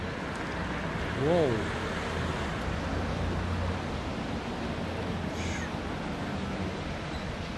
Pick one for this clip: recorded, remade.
recorded